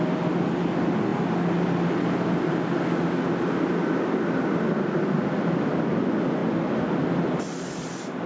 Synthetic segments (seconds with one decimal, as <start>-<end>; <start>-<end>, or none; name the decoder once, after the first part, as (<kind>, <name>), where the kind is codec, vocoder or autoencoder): none